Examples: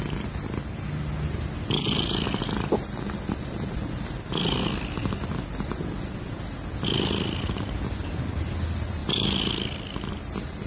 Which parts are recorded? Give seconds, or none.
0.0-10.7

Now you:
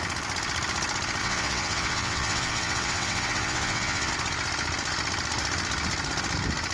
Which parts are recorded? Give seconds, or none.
0.0-1.2; 4.1-6.7

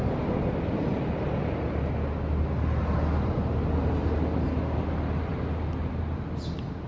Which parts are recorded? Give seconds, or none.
0.0-6.9

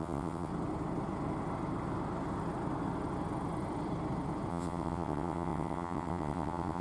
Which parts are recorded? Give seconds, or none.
0.5-4.5